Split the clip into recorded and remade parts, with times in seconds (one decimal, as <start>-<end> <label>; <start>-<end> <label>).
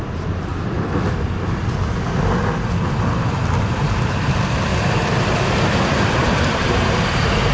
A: 0.0-0.5 remade; 0.5-3.7 recorded; 3.7-4.7 remade; 4.7-6.3 recorded; 6.3-7.5 remade